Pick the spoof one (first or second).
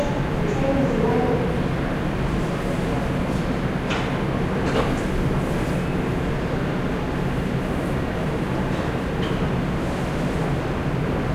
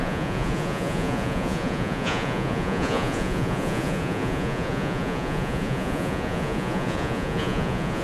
second